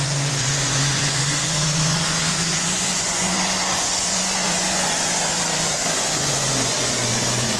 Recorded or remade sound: remade